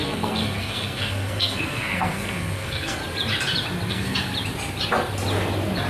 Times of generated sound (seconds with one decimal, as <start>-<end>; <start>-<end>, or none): 0.0-3.0; 3.9-4.3

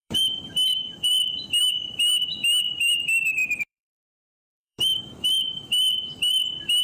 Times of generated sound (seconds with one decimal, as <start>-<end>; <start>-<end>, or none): 0.0-1.1; 1.6-6.8

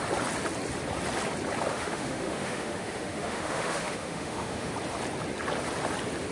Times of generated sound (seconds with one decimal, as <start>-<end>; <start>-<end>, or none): 1.7-4.7

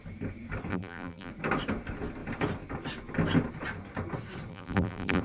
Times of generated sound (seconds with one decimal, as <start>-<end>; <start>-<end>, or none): 0.7-1.3; 4.5-5.2

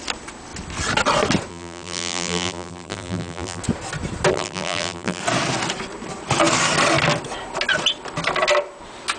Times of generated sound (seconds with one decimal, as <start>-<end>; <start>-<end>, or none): 1.5-3.6; 4.3-5.2